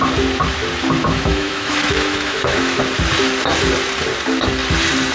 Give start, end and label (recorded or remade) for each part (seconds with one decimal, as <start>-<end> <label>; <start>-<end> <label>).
0.0-1.0 recorded; 1.0-2.8 remade; 2.8-5.1 recorded